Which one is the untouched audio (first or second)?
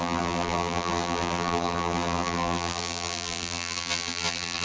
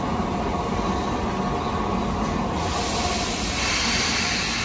second